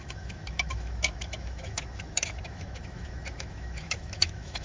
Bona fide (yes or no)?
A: no